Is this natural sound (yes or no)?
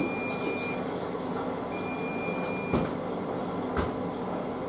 yes